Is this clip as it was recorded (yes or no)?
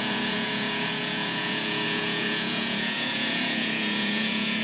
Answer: no